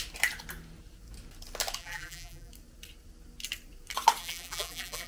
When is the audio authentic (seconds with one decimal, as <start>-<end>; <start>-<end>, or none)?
0.0-1.8; 2.5-4.2